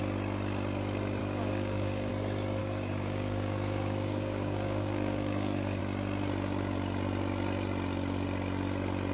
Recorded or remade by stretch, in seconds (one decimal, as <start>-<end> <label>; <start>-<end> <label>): 0.0-1.2 recorded; 1.2-2.1 remade; 2.1-2.6 recorded; 2.6-5.8 remade; 5.8-9.1 recorded